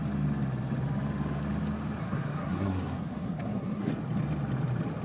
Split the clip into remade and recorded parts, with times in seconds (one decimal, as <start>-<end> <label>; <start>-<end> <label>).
0.0-2.0 recorded; 2.0-3.9 remade; 3.9-5.0 recorded